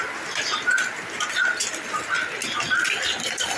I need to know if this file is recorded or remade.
recorded